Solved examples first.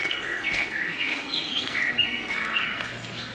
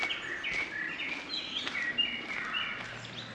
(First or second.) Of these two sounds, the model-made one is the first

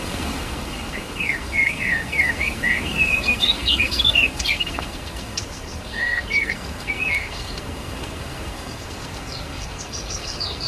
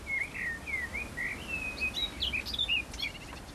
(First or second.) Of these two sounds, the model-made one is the first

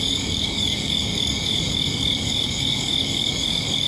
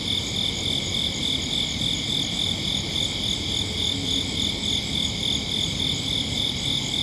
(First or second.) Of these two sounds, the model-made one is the first